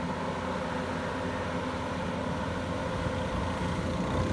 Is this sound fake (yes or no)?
no